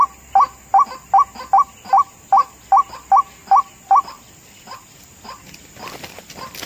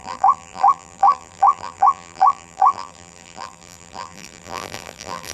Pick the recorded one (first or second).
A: first